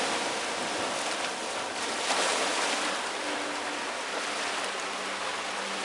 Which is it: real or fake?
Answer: real